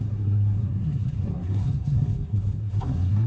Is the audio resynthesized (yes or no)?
yes